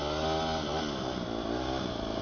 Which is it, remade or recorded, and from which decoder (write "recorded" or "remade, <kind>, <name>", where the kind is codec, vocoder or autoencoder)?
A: recorded